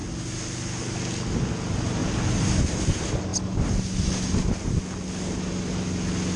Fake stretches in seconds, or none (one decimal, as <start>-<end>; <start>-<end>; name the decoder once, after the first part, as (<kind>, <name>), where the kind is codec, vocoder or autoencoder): none

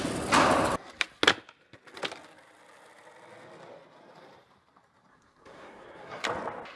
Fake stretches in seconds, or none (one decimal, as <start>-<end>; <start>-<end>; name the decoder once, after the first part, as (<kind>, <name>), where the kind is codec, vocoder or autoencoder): 5.1-6.2 (codec, SNAC)

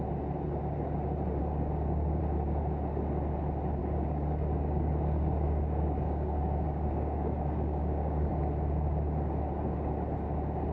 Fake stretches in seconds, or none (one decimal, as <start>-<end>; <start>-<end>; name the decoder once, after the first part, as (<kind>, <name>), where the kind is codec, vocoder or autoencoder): 1.4-2.2 (codec, DAC); 3.8-8.3

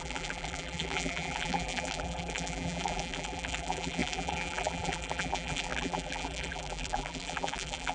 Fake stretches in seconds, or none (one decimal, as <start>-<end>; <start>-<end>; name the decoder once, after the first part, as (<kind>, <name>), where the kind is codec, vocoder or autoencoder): 0.0-7.9 (vocoder, BigVGAN v2)

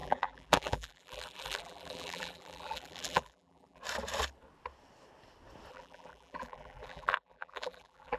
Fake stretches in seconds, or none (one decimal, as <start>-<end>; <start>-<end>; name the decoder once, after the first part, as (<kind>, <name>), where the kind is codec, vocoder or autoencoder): 0.0-3.8 (vocoder, BigVGAN v2); 5.7-8.2

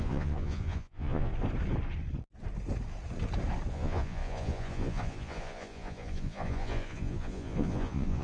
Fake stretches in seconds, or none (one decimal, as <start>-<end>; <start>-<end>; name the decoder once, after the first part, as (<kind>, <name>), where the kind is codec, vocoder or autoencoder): 0.0-1.3 (vocoder, Vocos); 3.7-8.2

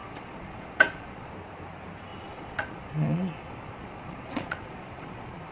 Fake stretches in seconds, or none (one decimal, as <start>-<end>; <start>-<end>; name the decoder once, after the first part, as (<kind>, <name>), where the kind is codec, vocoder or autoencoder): 0.0-1.3 (vocoder, Vocos); 2.1-5.5

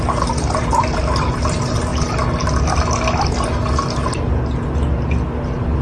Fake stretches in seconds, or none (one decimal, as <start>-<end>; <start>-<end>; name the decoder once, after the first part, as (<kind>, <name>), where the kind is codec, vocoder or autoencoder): none